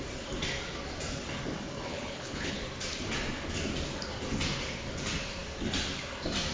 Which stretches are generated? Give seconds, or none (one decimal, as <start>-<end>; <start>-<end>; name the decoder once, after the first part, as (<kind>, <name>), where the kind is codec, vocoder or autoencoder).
1.9-2.6 (codec, HILCodec)